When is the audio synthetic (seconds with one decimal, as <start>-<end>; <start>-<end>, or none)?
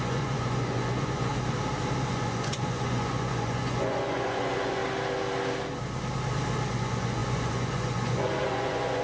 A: 0.0-1.3; 2.1-4.8; 6.7-9.0